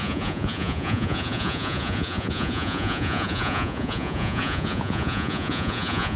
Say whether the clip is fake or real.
fake